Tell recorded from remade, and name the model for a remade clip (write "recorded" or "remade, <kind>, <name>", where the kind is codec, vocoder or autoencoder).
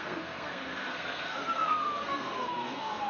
remade, codec, SNAC